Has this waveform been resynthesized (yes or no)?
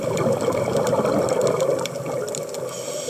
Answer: no